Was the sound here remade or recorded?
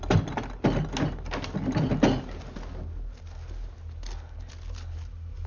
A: recorded